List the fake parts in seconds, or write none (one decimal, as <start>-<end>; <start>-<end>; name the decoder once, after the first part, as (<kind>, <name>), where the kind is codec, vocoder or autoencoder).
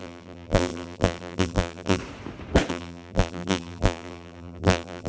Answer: 0.0-2.0 (vocoder, BigVGAN v2); 2.7-5.1